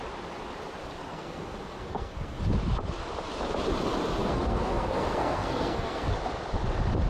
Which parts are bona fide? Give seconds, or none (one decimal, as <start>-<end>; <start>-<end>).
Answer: 0.0-1.1; 2.4-4.2; 6.1-7.1

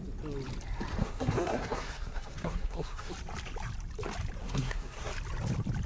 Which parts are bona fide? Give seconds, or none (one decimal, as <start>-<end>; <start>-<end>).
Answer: 0.0-1.0; 3.1-4.4; 5.1-5.9